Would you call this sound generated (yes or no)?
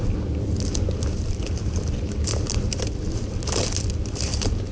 yes